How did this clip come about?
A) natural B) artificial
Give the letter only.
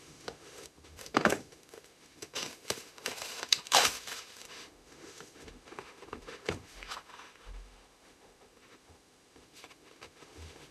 B